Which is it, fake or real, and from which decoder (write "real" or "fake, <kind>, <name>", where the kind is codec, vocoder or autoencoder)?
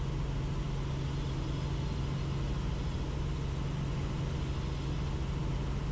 real